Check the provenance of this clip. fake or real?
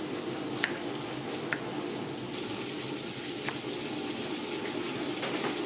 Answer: real